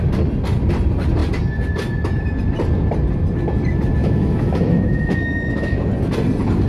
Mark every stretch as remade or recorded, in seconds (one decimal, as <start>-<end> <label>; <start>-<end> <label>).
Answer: 0.0-4.0 recorded; 4.0-5.9 remade; 5.9-6.7 recorded